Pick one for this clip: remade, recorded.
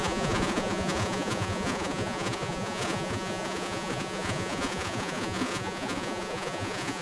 remade